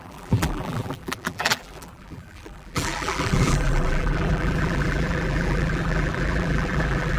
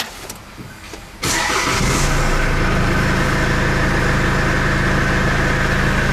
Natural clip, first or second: second